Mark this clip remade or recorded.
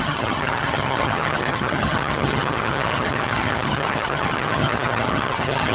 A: remade